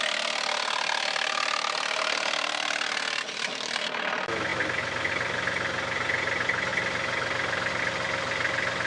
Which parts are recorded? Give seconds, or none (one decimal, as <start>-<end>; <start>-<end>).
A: 0.0-8.9